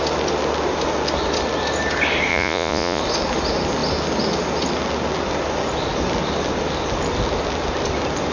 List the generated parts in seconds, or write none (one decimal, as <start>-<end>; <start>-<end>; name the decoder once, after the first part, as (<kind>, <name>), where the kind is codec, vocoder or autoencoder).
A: 2.3-3.0 (vocoder, Vocos)